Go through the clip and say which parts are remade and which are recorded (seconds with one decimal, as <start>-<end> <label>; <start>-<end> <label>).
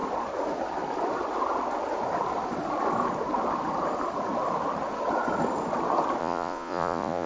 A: 0.0-6.2 recorded; 6.2-7.3 remade